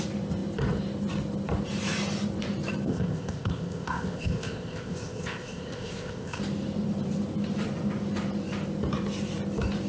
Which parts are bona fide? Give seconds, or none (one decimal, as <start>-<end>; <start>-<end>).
0.0-2.9; 6.4-9.9